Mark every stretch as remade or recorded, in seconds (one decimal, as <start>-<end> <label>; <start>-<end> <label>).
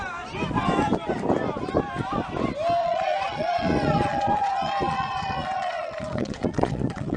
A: 0.0-2.8 recorded; 2.8-7.2 remade